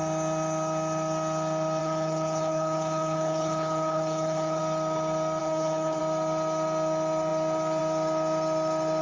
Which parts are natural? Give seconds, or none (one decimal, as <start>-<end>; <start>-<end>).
0.0-1.8; 4.6-5.4; 6.0-9.0